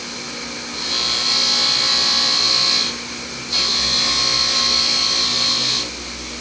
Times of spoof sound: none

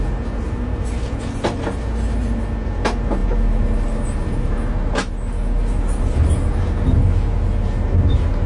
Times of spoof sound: none

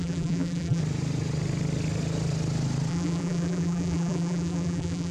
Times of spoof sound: 0.0-0.8 (vocoder, BigVGAN v2); 2.9-5.1

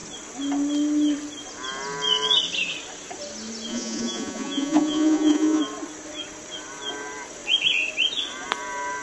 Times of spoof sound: 3.7-5.6 (vocoder, Vocos)

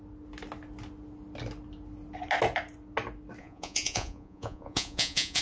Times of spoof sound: 3.4-5.4 (vocoder, Vocos)

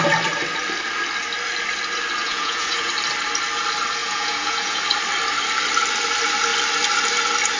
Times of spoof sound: 2.2-2.9 (vocoder, Vocos); 4.0-4.8

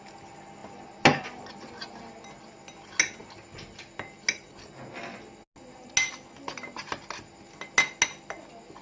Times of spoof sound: none

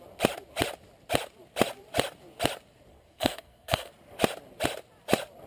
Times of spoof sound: 2.9-3.9 (codec, SNAC)